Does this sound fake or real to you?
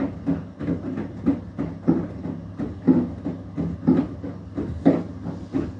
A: real